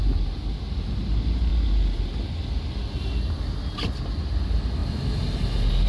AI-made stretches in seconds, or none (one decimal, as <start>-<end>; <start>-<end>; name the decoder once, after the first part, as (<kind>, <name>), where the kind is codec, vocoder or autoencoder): none

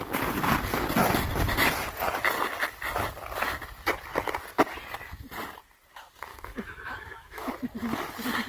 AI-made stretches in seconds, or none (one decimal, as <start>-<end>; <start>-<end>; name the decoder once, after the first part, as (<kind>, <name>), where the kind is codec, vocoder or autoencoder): 6.3-7.5 (autoencoder, DAC-VAE)

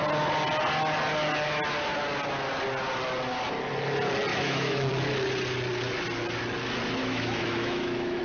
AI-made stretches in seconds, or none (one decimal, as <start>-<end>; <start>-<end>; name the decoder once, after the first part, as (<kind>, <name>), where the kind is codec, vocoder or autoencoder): 4.3-4.9 (autoencoder, DAC-VAE); 7.0-8.2

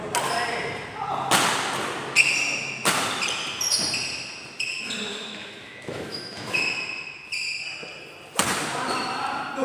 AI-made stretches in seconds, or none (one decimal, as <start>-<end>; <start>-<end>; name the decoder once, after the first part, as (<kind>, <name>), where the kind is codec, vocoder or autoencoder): 5.1-6.6 (autoencoder, DAC-VAE)

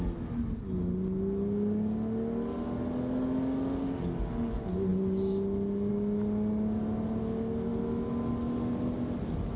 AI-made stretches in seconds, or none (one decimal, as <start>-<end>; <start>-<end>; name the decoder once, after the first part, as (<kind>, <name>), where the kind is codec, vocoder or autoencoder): none

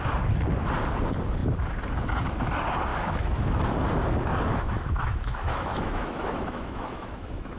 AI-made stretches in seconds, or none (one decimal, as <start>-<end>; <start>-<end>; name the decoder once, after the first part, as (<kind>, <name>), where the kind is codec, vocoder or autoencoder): 2.9-3.4 (autoencoder, DAC-VAE); 4.5-7.6